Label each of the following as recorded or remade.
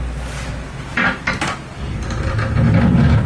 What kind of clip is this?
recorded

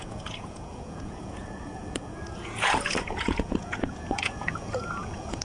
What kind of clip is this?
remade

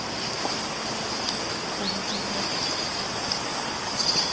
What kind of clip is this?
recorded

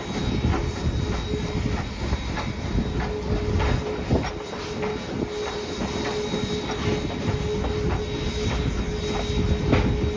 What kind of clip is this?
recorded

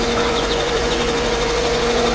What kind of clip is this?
remade